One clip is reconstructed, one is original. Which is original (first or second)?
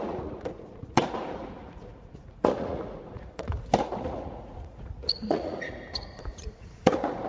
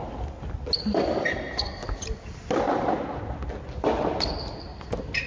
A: second